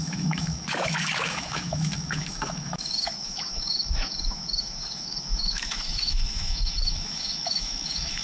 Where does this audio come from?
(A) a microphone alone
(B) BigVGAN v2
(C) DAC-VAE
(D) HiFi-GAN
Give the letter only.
C